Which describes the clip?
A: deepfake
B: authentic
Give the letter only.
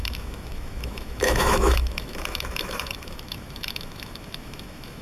A